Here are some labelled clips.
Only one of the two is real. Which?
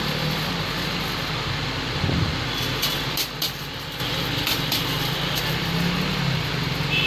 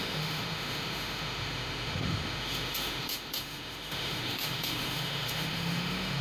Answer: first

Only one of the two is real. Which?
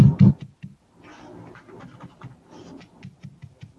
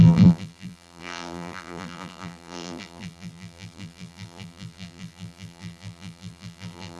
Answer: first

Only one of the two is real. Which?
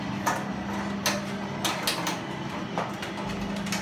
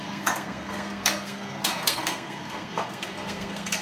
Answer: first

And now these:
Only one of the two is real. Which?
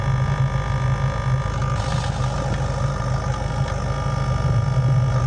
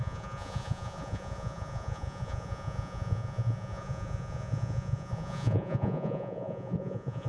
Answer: first